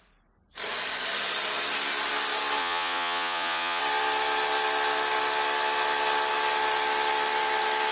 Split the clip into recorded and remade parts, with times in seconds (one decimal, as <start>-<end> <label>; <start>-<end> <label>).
0.0-2.6 recorded; 2.6-3.8 remade; 3.8-7.9 recorded